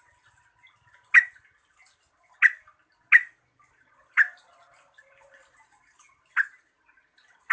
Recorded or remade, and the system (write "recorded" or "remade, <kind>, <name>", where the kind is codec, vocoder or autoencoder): recorded